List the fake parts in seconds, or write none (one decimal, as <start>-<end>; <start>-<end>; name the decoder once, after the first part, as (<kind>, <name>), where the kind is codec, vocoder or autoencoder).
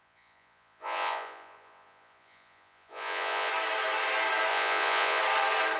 0.0-3.5 (vocoder, Vocos); 4.5-5.2